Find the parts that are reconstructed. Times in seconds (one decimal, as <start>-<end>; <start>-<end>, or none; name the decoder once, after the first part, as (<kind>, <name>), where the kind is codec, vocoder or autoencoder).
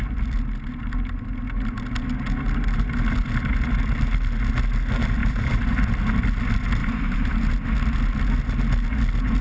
5.2-5.9 (vocoder, BigVGAN v2); 6.8-7.5